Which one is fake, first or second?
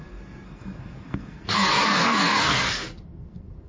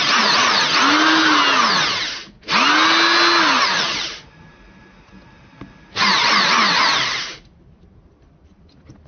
first